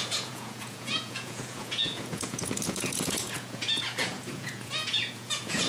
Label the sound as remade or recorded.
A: remade